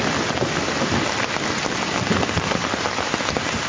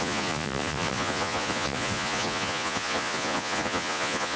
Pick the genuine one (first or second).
first